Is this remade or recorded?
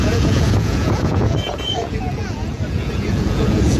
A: remade